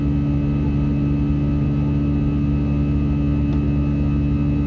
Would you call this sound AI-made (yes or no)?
no